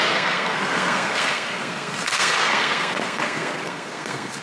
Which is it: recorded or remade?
remade